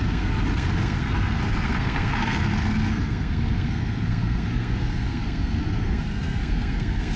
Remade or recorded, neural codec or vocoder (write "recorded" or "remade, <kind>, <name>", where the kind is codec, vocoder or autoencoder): remade, codec, SNAC